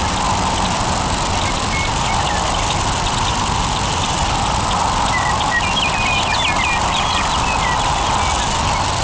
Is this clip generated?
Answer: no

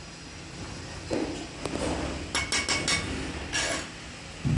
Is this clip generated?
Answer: no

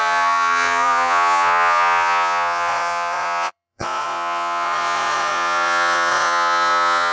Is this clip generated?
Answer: yes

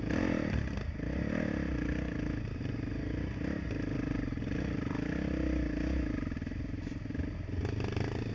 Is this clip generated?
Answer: no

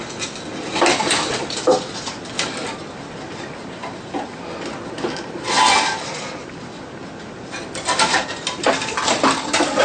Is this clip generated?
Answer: no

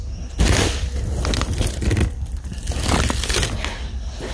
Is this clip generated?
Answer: no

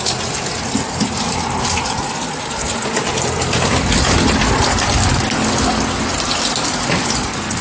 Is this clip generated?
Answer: no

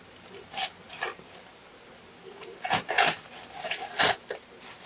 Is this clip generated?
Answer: yes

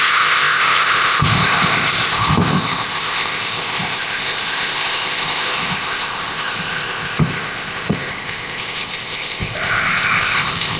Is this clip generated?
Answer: yes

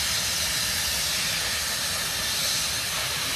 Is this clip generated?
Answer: no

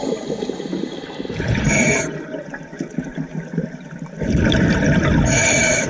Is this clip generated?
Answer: no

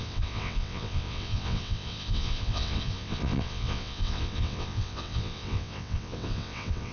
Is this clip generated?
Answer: yes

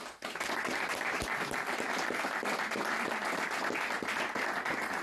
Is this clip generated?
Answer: no